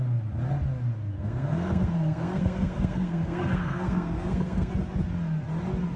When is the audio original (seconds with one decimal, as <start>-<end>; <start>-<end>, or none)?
0.0-1.1; 4.7-6.0